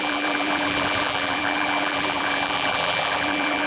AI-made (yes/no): yes